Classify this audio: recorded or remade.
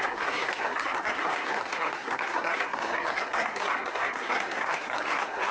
remade